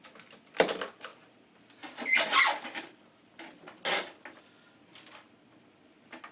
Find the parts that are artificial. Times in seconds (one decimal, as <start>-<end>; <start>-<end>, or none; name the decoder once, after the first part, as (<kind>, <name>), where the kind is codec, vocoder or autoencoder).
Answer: none